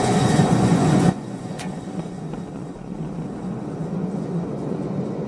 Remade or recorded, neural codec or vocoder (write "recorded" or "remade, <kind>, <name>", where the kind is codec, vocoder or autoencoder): remade, vocoder, Vocos